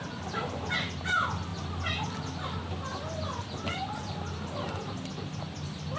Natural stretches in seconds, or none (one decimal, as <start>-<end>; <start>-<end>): 0.0-6.0